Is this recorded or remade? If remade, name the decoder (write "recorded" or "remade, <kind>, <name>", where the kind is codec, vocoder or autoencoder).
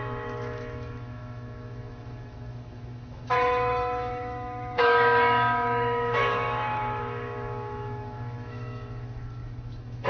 remade, autoencoder, DAC-VAE